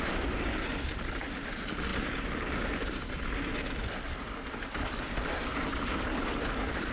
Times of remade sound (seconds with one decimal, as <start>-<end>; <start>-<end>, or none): none